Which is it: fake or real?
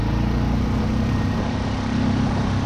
real